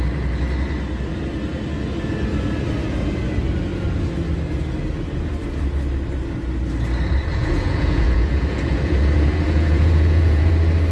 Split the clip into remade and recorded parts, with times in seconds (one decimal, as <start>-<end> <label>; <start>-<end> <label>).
0.0-7.3 recorded; 7.3-10.5 remade; 10.5-10.9 recorded